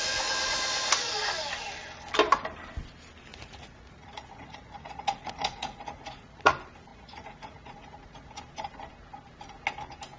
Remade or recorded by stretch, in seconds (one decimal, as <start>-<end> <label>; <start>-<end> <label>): 0.0-3.3 recorded; 3.3-6.5 remade; 6.5-6.9 recorded; 6.9-8.4 remade; 8.4-10.2 recorded